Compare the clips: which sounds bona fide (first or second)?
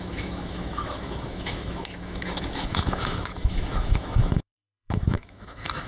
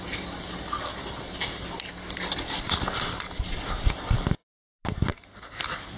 second